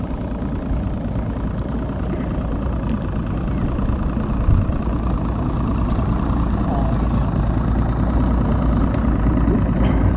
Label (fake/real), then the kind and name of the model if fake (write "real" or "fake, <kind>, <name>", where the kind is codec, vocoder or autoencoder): real